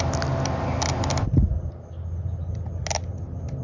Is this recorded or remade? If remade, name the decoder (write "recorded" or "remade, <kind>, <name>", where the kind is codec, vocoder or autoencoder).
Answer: recorded